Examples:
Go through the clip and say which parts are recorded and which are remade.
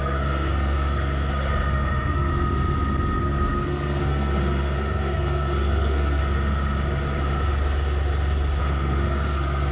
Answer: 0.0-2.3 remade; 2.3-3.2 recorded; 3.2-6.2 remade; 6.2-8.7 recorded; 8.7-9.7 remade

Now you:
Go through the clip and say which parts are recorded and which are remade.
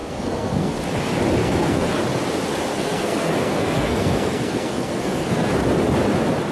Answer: 0.0-0.8 remade; 0.8-1.4 recorded; 1.4-2.0 remade; 2.0-2.7 recorded; 2.7-5.5 remade; 5.5-6.5 recorded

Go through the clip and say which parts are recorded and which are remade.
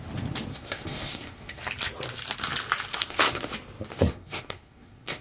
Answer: 0.0-0.5 recorded; 0.5-1.6 remade; 1.6-2.9 recorded; 2.9-3.5 remade; 3.5-3.9 recorded; 3.9-5.2 remade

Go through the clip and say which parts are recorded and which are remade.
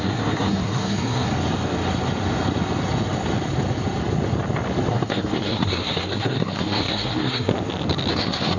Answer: 0.0-1.3 remade; 1.3-4.9 recorded; 4.9-7.5 remade; 7.5-8.1 recorded; 8.1-8.6 remade